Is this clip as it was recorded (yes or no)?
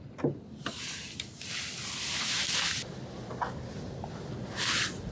yes